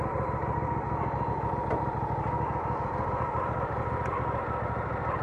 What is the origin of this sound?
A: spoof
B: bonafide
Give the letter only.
B